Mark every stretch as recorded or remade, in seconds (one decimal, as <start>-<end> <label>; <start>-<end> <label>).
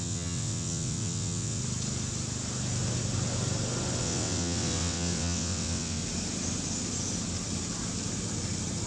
0.0-1.6 remade; 1.6-4.0 recorded; 4.0-6.0 remade; 6.0-8.9 recorded